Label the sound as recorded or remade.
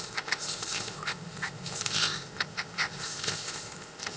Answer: remade